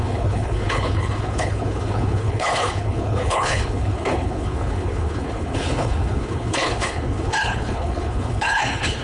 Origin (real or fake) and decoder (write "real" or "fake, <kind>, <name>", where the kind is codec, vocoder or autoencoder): fake, codec, HILCodec